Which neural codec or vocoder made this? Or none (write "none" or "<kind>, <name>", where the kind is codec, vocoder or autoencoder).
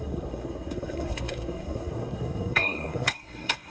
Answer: codec, SNAC